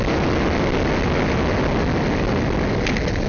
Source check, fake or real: real